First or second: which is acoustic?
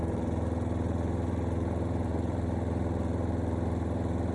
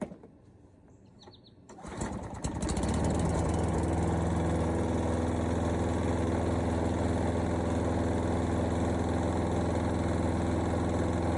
second